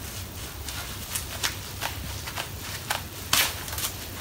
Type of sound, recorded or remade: recorded